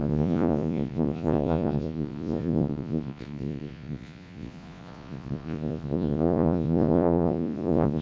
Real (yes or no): no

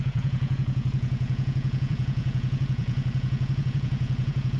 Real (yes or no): no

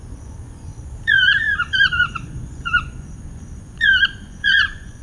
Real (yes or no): no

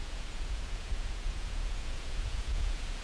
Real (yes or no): no